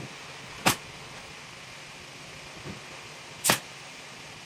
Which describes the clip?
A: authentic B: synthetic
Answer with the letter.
A